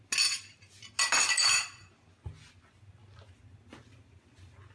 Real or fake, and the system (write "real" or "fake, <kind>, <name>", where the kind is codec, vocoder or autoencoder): real